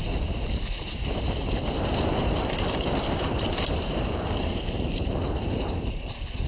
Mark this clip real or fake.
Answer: fake